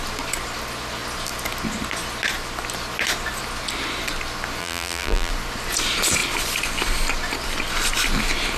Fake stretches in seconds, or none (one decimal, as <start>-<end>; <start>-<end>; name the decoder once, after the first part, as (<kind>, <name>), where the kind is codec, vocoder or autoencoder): 4.6-5.3 (vocoder, BigVGAN v2)